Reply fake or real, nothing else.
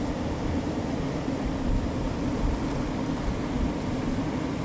real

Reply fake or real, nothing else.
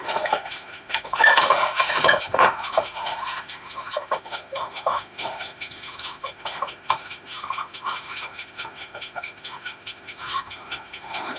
fake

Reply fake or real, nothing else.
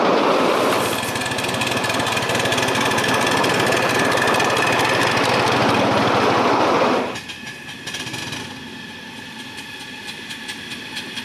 real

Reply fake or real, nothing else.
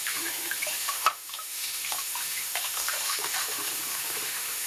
fake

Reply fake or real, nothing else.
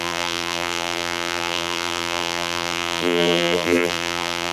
fake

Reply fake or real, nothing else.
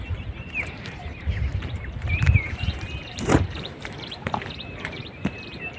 fake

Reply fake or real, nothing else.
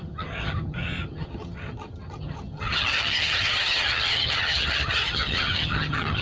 fake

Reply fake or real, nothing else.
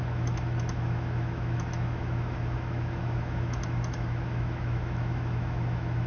fake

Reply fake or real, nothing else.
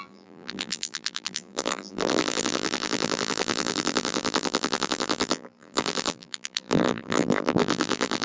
fake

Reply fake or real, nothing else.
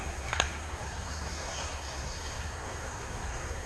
fake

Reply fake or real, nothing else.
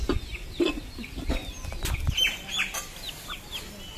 real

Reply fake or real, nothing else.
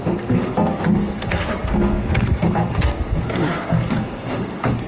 fake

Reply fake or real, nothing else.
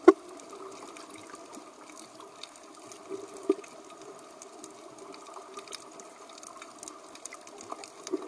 real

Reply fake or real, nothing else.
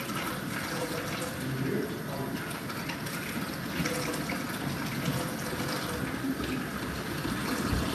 real